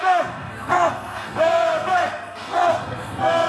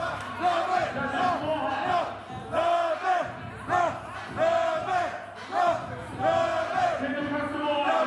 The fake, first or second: first